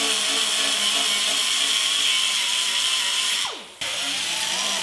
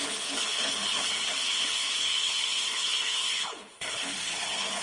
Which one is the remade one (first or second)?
second